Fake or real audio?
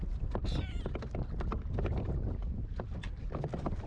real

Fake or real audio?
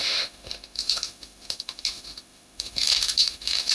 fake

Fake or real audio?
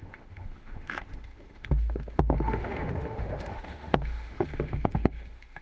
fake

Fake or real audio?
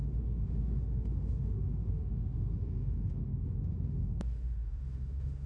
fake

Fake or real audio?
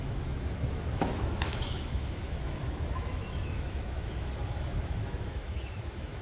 fake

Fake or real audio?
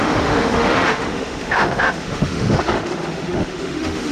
fake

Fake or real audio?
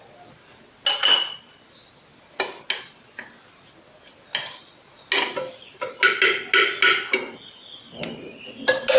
real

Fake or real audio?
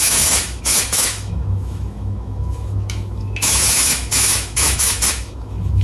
fake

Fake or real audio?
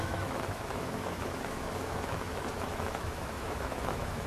fake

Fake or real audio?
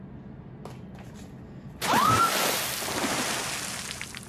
real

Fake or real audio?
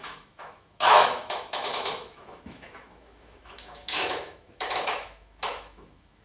fake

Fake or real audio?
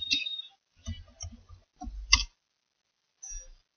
real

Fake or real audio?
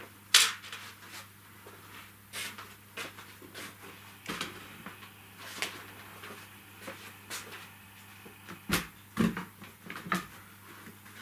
real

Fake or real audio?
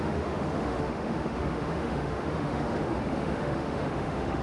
fake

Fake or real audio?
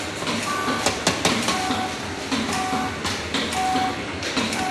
real